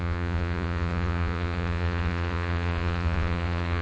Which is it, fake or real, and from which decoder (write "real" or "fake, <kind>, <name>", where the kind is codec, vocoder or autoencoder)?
fake, vocoder, Vocos